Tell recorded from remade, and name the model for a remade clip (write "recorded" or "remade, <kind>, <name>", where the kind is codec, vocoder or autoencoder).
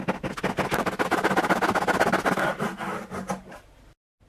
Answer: recorded